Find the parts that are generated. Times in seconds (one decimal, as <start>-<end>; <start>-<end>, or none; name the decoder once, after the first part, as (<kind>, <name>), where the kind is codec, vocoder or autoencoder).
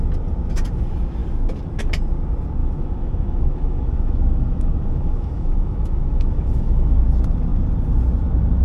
2.6-7.0 (autoencoder, DAC-VAE)